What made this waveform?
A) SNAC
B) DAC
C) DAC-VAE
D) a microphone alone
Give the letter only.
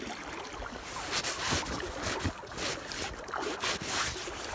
D